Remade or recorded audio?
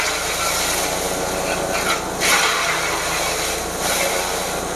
recorded